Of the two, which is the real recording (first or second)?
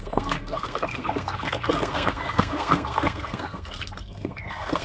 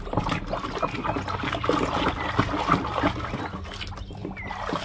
second